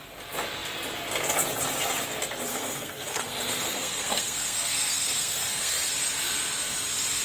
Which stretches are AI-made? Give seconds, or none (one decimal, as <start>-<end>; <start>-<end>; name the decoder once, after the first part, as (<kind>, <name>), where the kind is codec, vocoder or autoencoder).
2.5-5.9 (codec, SNAC)